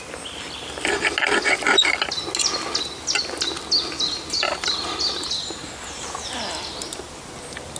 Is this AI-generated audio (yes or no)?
no